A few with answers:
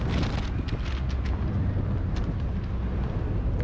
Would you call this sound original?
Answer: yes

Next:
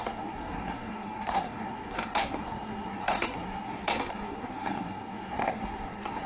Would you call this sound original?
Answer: no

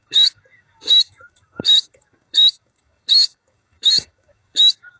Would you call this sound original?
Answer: no